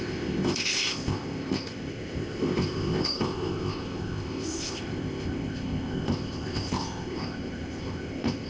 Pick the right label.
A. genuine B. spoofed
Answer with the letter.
B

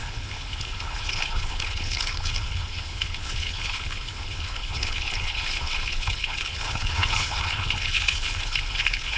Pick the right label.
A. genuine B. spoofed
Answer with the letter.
B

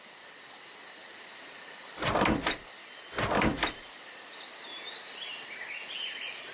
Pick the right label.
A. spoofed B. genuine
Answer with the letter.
B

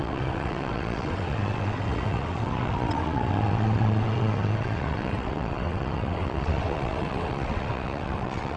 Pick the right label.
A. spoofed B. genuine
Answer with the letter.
A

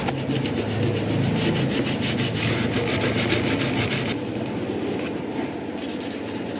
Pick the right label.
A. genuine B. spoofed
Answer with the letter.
A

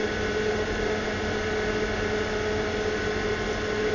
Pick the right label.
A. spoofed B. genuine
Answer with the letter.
B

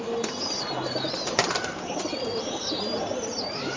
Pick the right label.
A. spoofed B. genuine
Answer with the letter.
A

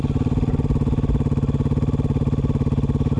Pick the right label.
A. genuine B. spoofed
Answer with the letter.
A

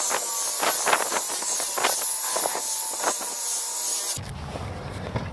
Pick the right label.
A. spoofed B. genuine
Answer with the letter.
B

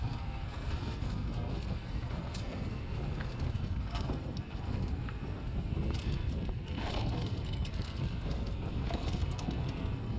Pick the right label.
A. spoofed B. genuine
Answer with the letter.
A